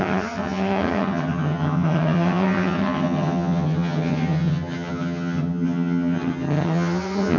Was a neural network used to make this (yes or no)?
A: yes